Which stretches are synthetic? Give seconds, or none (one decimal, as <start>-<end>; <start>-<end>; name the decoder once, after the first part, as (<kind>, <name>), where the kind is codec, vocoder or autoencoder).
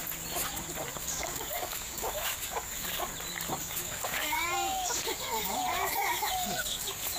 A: 1.0-3.1 (codec, DAC); 3.6-7.2